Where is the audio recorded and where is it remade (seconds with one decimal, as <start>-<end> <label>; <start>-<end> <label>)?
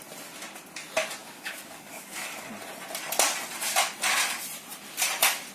0.0-1.2 recorded; 1.2-2.5 remade; 2.5-5.5 recorded